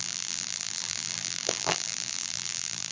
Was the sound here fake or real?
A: fake